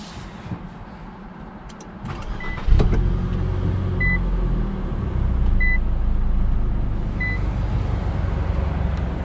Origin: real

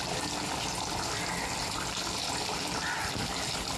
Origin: real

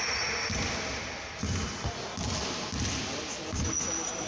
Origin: real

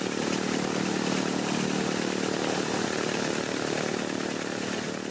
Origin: real